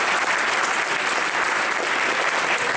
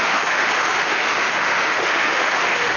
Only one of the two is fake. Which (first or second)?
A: second